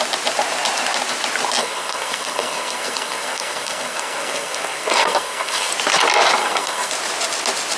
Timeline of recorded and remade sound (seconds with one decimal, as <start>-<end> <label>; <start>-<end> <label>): 0.0-1.6 recorded; 1.6-5.7 remade; 5.7-6.4 recorded; 6.4-6.9 remade; 6.9-7.8 recorded